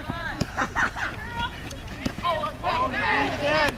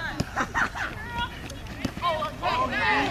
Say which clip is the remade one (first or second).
first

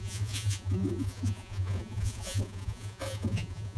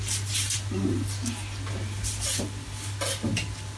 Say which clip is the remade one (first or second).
first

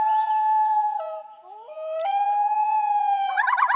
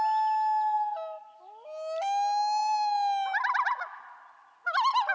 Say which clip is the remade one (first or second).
first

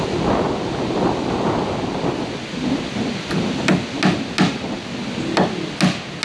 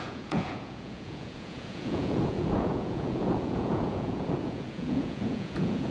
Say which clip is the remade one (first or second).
second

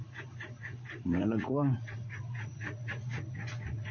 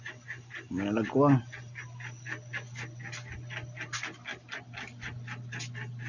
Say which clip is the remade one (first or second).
first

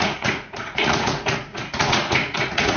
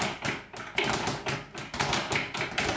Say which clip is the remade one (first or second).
first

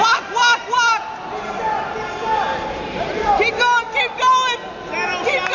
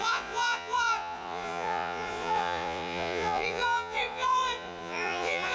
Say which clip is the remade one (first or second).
second